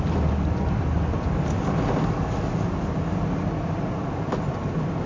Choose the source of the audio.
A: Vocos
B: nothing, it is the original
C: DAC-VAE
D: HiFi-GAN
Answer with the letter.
B